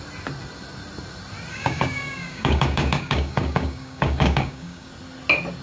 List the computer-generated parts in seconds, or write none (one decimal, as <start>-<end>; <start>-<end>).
1.5-4.9